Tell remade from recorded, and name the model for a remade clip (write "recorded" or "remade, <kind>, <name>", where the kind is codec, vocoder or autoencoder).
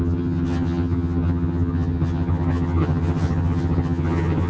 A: remade, vocoder, HiFi-GAN